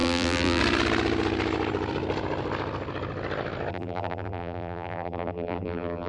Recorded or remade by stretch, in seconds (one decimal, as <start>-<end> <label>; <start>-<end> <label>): 0.0-0.6 remade; 0.6-3.7 recorded; 3.7-6.1 remade